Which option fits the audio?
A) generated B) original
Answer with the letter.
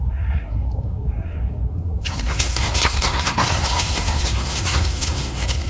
A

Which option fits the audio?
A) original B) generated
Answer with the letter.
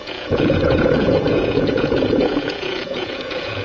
B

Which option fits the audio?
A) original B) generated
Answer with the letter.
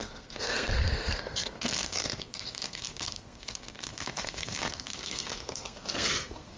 B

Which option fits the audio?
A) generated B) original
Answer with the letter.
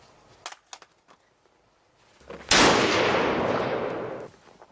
B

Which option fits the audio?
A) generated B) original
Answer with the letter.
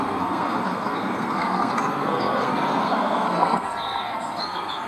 A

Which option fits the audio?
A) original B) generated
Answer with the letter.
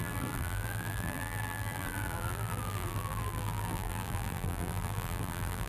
B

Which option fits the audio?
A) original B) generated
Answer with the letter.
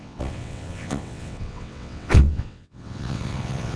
B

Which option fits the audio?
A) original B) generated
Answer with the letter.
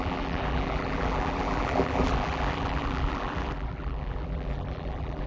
B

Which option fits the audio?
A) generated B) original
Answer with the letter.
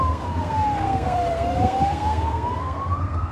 A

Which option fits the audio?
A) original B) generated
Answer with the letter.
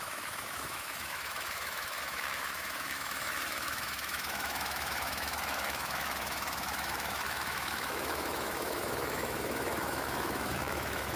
B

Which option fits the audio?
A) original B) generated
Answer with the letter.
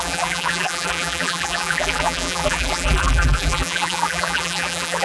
B